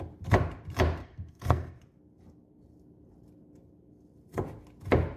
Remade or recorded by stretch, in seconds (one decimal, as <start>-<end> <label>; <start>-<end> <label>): 0.0-1.0 recorded; 1.0-1.8 remade; 1.8-5.2 recorded